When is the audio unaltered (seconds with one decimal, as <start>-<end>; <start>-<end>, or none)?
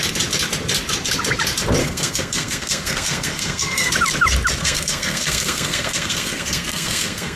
0.0-1.8; 3.9-4.6